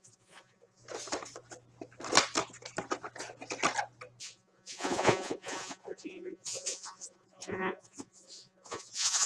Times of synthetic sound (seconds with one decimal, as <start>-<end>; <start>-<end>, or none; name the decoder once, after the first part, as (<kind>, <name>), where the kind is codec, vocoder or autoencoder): 0.0-0.8 (vocoder, Vocos); 4.2-9.3